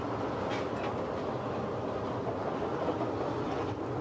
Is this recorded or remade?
recorded